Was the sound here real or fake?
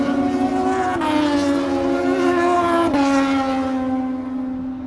real